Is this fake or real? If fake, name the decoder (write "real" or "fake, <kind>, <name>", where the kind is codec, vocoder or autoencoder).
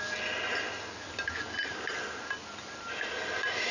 real